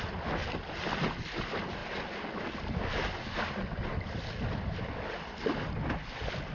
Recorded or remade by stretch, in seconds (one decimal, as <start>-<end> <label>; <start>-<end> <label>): 0.0-6.5 recorded